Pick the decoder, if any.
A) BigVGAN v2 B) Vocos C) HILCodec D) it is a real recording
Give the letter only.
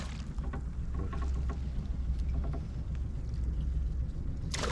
D